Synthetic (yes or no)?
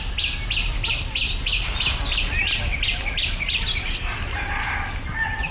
no